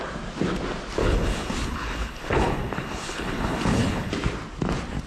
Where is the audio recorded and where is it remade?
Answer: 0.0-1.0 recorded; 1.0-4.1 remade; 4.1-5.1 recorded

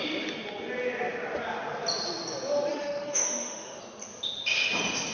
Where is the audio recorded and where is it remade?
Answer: 0.0-2.7 recorded; 2.7-3.8 remade; 3.8-5.1 recorded

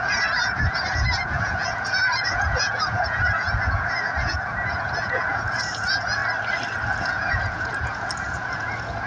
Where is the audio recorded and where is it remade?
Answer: 0.0-6.2 remade; 6.2-7.0 recorded; 7.0-9.1 remade